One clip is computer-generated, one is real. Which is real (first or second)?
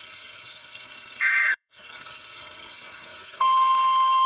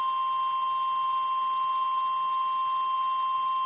second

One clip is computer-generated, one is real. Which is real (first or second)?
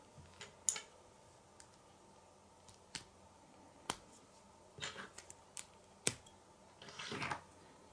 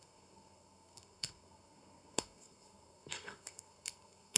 first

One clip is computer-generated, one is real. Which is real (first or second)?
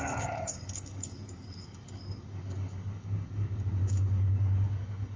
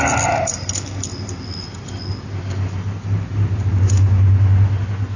second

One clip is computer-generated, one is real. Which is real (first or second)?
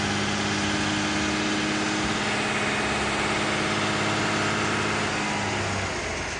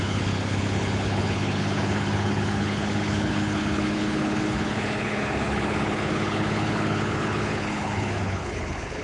first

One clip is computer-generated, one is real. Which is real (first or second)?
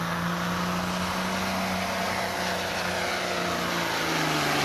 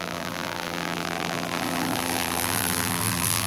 first